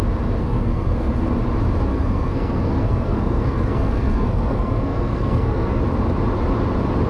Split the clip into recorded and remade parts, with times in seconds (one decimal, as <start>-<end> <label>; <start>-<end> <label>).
0.0-0.4 recorded; 0.4-1.1 remade; 1.1-1.9 recorded; 1.9-5.8 remade; 5.8-7.1 recorded